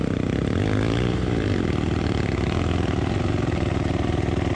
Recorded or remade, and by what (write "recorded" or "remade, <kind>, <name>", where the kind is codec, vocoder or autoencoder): recorded